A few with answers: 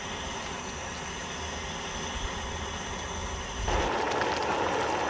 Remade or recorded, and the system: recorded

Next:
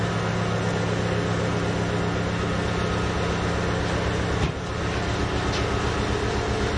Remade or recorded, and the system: recorded